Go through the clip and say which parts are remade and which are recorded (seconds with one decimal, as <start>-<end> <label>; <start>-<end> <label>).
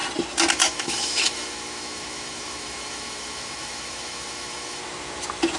0.0-0.5 recorded; 0.5-4.8 remade; 4.8-5.6 recorded